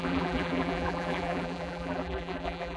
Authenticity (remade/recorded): remade